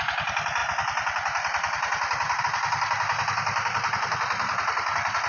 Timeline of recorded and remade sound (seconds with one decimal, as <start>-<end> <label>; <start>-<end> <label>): 0.0-5.3 recorded